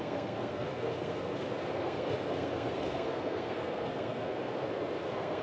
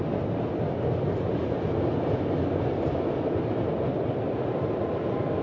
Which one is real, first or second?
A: second